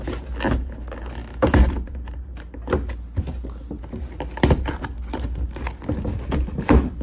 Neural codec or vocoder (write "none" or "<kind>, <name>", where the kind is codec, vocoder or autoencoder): none